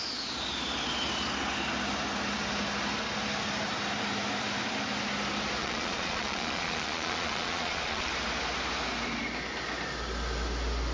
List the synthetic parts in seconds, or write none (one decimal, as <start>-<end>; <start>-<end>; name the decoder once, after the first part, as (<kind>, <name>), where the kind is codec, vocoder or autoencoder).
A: 5.6-8.1 (vocoder, Vocos)